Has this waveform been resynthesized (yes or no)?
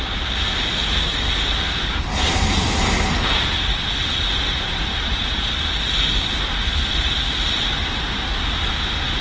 no